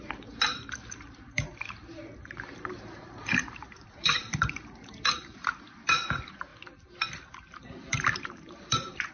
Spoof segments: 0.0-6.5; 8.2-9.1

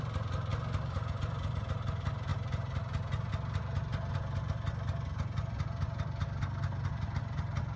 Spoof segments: 2.3-3.3

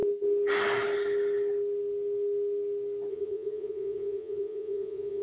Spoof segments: 3.1-5.2

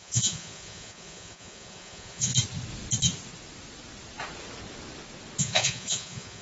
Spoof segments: 0.0-2.3; 5.4-6.4

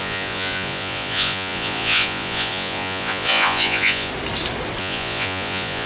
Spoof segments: 0.0-4.1; 4.8-5.9

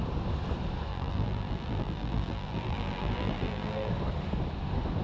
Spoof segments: 0.9-3.9

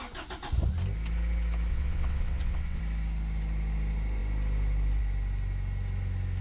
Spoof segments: 1.7-2.8

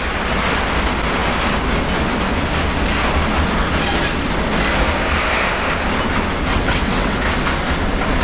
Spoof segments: 6.5-7.2